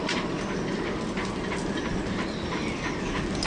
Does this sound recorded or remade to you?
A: recorded